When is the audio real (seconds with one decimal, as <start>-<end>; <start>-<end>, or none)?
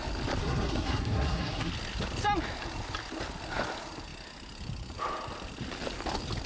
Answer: 0.0-0.4; 1.7-6.5